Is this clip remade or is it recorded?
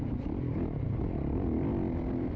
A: recorded